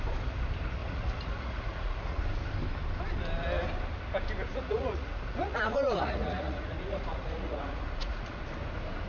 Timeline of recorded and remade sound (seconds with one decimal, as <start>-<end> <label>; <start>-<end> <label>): 0.0-0.8 recorded; 0.8-2.2 remade; 2.2-4.5 recorded; 4.5-8.4 remade; 8.4-9.1 recorded